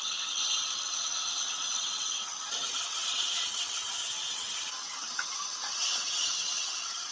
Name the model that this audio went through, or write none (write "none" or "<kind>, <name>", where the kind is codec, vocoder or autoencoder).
vocoder, WaveNeXt